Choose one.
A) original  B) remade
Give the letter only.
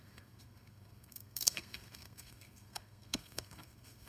B